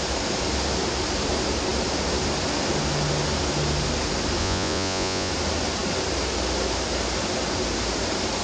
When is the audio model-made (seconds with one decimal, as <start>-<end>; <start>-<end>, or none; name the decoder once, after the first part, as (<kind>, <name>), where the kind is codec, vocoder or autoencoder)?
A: 4.4-5.3 (vocoder, Vocos)